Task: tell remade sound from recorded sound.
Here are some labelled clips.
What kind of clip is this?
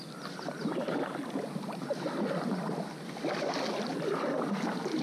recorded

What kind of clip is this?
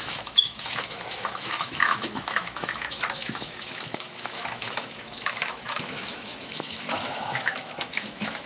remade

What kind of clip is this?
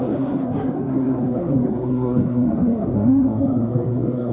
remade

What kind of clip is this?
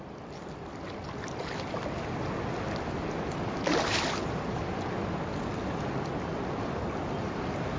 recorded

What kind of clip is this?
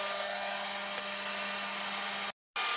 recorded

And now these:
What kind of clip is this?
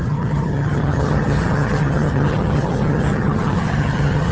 remade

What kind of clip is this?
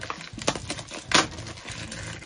recorded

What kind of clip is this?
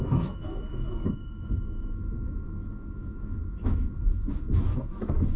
remade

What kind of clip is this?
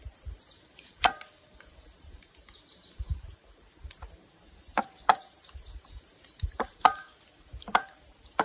remade